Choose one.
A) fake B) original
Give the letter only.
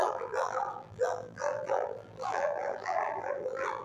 A